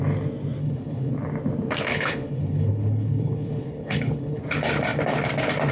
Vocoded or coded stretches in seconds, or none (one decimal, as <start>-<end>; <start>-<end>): 0.6-1.1; 1.9-4.4